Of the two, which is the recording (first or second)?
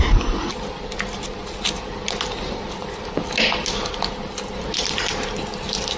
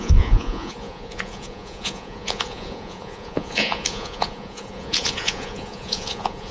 first